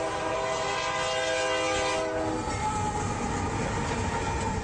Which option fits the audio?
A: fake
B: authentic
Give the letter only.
B